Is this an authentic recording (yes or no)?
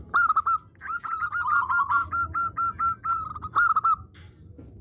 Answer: yes